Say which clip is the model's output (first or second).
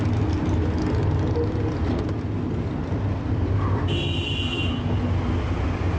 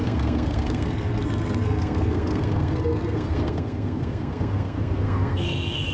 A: second